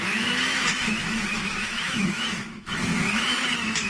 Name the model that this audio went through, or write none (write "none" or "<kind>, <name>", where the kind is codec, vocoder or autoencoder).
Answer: autoencoder, DAC-VAE